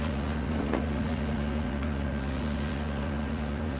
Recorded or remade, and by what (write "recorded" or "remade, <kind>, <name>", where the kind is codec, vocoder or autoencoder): remade, vocoder, Vocos